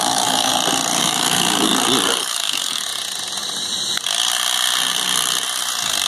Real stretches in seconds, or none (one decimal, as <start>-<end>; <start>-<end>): 0.5-1.0; 1.7-2.2; 2.9-6.1